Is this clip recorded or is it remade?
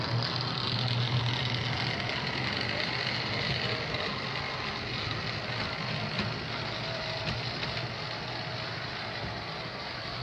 recorded